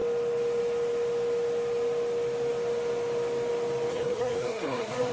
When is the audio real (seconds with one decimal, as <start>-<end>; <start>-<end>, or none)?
0.0-3.9